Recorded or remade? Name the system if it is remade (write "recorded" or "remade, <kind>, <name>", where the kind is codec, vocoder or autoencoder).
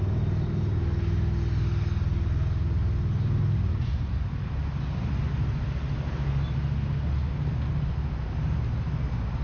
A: recorded